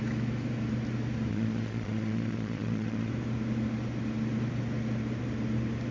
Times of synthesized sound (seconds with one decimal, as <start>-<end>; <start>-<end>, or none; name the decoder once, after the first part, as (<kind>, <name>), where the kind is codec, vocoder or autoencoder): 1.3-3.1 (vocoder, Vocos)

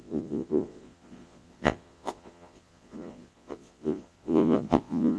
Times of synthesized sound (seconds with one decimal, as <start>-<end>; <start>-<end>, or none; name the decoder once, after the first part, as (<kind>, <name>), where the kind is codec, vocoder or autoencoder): 0.0-5.2 (vocoder, Vocos)

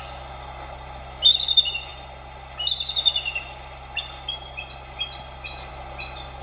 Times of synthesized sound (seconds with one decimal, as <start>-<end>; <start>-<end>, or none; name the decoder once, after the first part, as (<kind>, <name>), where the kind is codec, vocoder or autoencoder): none

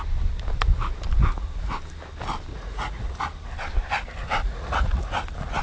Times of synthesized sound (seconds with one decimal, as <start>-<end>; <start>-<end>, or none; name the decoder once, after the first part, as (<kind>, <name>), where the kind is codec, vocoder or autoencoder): 2.5-3.2 (vocoder, Vocos); 4.4-5.1

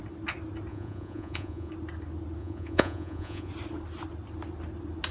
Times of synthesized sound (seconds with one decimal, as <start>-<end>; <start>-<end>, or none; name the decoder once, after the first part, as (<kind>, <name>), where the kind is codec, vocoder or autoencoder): 0.7-1.7 (vocoder, Vocos); 2.4-3.5

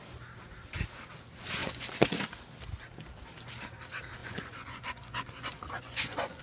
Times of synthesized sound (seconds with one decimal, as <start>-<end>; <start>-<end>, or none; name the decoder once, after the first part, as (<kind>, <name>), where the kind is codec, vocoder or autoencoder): 1.6-2.2 (vocoder, Vocos); 4.2-6.4

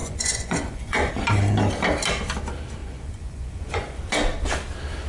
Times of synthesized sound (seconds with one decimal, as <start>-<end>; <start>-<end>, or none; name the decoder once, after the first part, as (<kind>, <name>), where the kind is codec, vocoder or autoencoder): 0.0-1.1 (vocoder, Vocos); 2.8-4.0